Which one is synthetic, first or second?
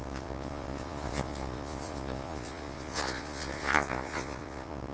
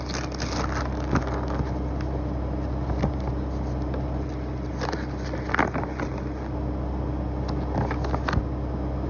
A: first